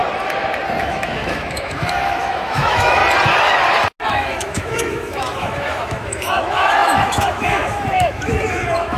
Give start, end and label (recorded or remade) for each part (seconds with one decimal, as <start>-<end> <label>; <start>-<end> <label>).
0.0-0.8 recorded; 0.8-3.0 remade; 3.0-4.1 recorded; 4.1-9.0 remade